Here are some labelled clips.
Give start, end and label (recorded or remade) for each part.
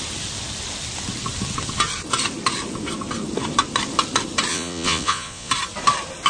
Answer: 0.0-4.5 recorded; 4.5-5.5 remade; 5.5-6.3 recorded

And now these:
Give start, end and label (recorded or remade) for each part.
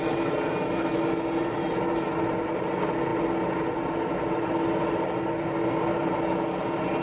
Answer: 0.0-7.0 recorded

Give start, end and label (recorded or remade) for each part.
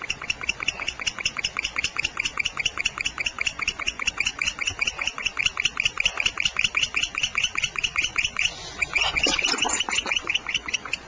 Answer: 0.0-5.4 remade; 5.4-6.7 recorded; 6.7-11.1 remade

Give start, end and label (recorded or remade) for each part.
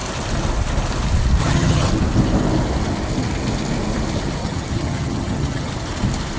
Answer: 0.0-1.4 recorded; 1.4-1.9 remade; 1.9-4.4 recorded; 4.4-5.7 remade; 5.7-6.4 recorded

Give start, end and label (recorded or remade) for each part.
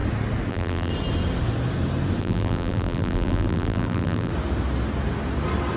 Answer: 0.0-0.5 recorded; 0.5-0.9 remade; 0.9-2.2 recorded; 2.2-4.3 remade; 4.3-5.8 recorded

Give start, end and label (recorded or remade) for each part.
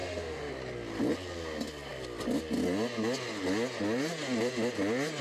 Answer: 0.0-0.5 remade; 0.5-5.2 recorded